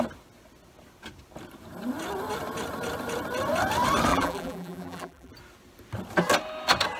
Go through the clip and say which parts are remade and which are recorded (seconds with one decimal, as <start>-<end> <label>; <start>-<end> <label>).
0.0-4.1 recorded; 4.1-5.3 remade; 5.3-7.0 recorded